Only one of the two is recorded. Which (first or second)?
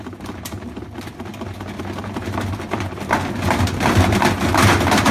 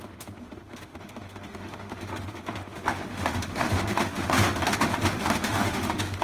first